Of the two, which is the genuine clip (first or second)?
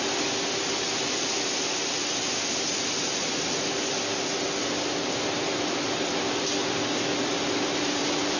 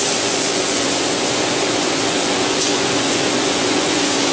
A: first